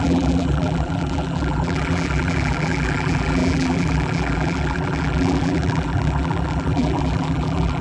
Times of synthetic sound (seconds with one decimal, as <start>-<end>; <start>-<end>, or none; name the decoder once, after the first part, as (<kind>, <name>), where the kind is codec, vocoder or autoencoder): 0.0-7.8 (vocoder, BigVGAN v2)